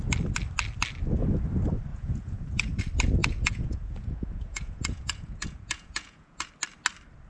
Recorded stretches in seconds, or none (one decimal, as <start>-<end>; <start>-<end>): 0.0-1.9; 2.8-3.2; 6.5-7.3